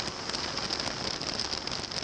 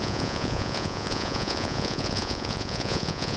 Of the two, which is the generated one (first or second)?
second